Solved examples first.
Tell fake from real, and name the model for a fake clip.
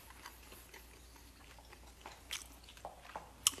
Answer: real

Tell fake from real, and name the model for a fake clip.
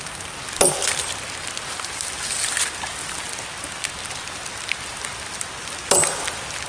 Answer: real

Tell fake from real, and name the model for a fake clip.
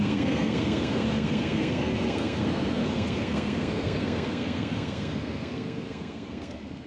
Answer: fake, codec, SNAC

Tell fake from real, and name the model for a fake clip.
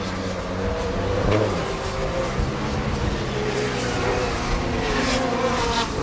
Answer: real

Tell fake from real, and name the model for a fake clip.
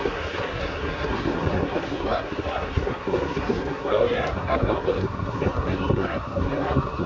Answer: fake, codec, SNAC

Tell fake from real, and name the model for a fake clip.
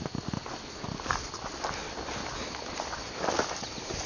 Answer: real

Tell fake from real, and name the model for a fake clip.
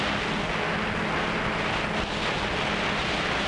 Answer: real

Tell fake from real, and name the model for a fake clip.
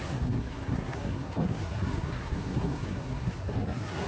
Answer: fake, codec, SNAC